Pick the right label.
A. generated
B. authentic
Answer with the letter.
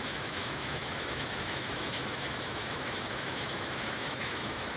A